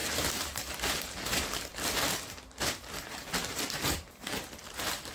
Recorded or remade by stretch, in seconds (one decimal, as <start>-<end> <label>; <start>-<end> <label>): 0.0-1.7 remade; 1.7-2.6 recorded; 2.6-5.1 remade